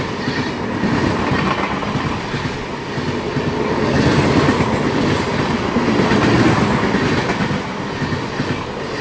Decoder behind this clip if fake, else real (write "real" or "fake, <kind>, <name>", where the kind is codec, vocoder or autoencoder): real